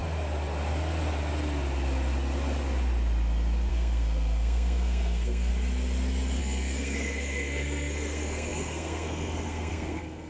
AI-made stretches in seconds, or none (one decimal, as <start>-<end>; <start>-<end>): 3.7-5.5; 6.4-10.3